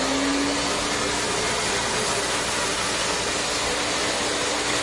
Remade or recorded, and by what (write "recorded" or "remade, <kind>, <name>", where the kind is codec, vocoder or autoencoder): recorded